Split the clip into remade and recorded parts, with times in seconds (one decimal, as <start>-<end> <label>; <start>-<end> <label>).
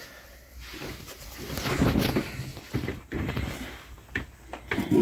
0.0-2.5 recorded; 2.5-4.2 remade; 4.2-5.0 recorded